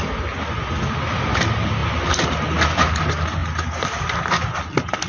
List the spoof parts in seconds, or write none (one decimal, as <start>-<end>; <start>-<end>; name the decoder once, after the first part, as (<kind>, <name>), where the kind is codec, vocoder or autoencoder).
none